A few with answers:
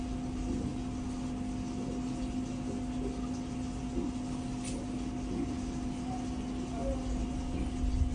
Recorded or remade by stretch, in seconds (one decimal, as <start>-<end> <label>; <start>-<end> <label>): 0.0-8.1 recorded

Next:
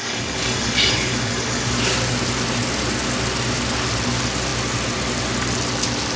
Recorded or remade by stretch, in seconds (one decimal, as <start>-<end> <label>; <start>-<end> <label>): 0.0-1.8 remade; 1.8-6.2 recorded

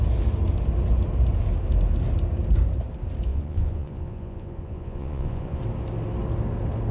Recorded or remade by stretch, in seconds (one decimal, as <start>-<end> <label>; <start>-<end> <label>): 0.0-3.3 recorded; 3.3-5.6 remade; 5.6-6.9 recorded

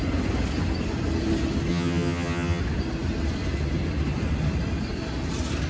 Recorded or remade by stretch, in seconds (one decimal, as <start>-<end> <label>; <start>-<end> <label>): 0.0-1.7 recorded; 1.7-2.6 remade; 2.6-5.7 recorded

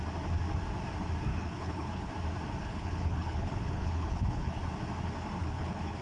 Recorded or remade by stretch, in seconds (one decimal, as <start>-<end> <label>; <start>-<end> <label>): 0.0-1.3 recorded; 1.3-2.1 remade; 2.1-2.6 recorded; 2.6-4.6 remade; 4.6-5.4 recorded; 5.4-6.0 remade